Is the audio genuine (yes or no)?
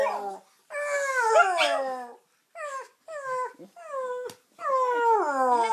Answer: yes